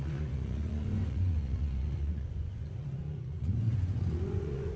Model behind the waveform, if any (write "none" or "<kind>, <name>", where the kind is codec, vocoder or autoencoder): vocoder, Vocos